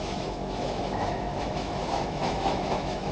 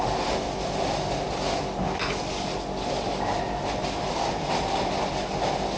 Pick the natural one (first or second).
second